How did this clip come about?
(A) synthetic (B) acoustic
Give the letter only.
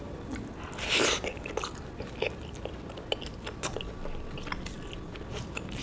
B